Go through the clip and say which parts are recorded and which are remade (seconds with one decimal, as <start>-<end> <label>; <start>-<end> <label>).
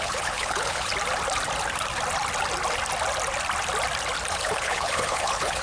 0.0-0.9 remade; 0.9-4.3 recorded; 4.3-5.6 remade